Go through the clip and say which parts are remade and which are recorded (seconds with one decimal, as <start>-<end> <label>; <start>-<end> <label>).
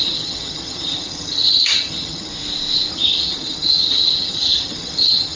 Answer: 0.0-2.3 remade; 2.3-2.9 recorded; 2.9-5.4 remade